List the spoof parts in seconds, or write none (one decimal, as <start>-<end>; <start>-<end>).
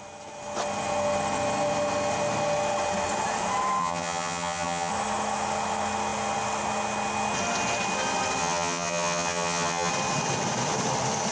3.8-4.9; 8.4-9.9